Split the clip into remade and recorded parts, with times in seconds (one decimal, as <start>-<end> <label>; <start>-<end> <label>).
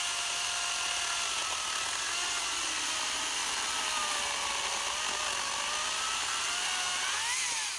0.0-3.4 recorded; 3.4-4.8 remade; 4.8-7.8 recorded